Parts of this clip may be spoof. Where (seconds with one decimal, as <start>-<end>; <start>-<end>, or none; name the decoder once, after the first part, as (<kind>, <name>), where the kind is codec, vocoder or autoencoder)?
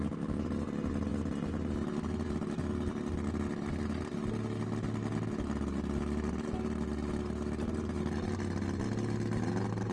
none